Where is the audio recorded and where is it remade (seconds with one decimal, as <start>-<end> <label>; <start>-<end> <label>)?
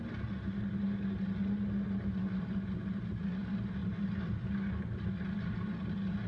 0.0-6.3 recorded